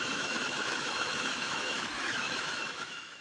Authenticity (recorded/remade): remade